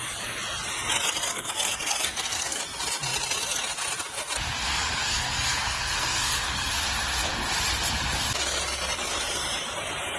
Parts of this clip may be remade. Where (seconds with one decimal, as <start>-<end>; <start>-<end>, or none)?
1.3-2.6; 4.6-6.7